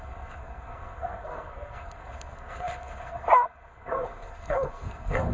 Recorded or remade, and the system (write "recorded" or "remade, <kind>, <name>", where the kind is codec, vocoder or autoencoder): remade, codec, SNAC